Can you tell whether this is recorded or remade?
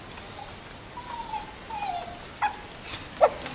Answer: recorded